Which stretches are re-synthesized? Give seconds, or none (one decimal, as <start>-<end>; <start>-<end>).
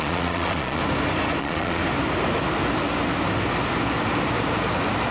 0.0-0.8; 1.4-1.8